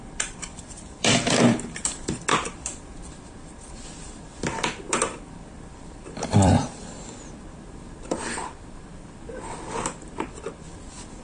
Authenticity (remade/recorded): remade